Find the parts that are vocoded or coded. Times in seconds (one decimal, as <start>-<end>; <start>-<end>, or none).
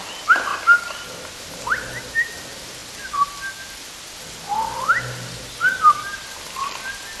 none